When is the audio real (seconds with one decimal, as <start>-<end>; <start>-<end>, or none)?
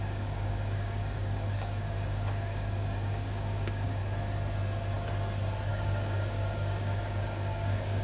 4.0-5.7